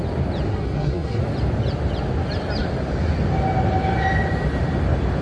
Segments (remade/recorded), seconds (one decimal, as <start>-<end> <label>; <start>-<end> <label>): 0.0-0.5 recorded; 0.5-1.2 remade; 1.2-5.2 recorded

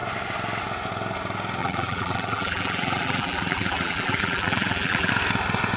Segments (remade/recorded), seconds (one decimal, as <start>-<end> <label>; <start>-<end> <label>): 0.0-1.6 recorded; 1.6-5.1 remade; 5.1-5.8 recorded

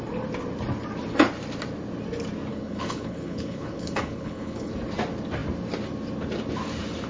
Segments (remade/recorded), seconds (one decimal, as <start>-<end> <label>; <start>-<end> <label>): 0.0-2.5 recorded; 2.5-4.7 remade; 4.7-7.1 recorded

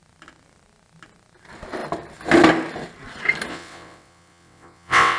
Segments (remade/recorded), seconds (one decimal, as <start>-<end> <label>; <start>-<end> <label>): 0.0-3.5 recorded; 3.5-5.2 remade

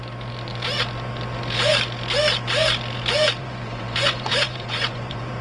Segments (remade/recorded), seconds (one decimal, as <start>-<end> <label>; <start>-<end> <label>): 0.0-3.4 recorded; 3.4-5.4 remade

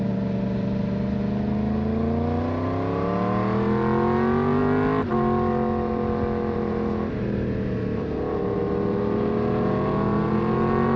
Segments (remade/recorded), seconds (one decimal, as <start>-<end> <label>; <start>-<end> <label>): 0.0-11.0 recorded

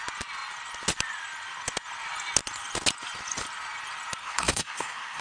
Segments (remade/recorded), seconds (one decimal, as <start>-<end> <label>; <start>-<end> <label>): 0.0-4.2 recorded; 4.2-5.2 remade

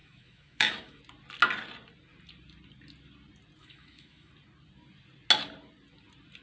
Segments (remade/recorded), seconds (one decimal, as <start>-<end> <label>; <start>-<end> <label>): 0.0-1.0 remade; 1.0-3.6 recorded; 3.6-4.3 remade; 4.3-6.4 recorded